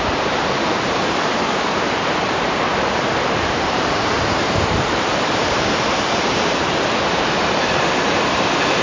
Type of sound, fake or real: fake